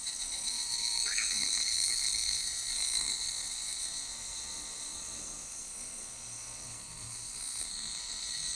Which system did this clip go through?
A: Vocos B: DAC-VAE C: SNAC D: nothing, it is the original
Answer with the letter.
C